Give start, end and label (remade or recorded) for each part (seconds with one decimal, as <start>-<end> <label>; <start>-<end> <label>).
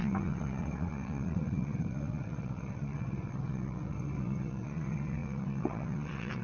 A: 0.0-6.4 remade